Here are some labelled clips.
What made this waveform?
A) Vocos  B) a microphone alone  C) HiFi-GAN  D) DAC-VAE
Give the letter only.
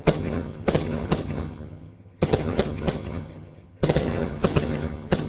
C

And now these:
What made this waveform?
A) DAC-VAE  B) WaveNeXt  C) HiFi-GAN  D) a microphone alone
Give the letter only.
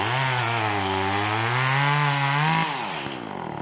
D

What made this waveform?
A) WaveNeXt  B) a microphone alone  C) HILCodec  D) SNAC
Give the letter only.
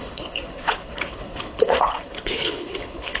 C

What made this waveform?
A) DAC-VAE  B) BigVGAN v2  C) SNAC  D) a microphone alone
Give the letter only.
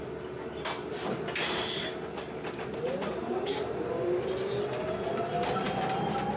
D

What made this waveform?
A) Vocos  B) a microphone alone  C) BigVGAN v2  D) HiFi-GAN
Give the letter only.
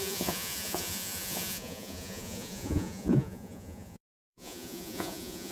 A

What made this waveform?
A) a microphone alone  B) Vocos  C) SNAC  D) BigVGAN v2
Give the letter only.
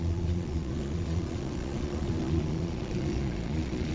B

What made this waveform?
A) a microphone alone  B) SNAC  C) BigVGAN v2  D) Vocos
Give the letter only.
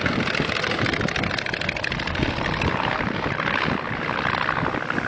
A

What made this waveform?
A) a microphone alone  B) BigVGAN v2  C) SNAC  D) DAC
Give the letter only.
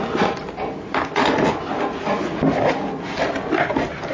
A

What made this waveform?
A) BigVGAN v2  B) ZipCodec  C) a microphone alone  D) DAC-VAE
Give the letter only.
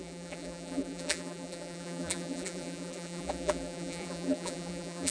A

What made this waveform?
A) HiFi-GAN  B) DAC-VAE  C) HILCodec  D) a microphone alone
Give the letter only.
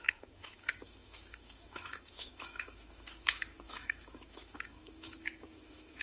B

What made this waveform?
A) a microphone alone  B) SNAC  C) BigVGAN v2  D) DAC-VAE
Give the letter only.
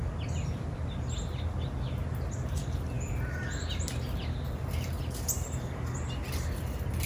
A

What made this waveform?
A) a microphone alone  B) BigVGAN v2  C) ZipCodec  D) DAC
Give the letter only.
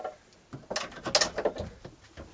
A